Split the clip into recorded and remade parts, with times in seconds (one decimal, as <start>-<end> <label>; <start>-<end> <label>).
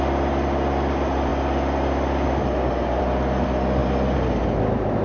0.0-5.0 recorded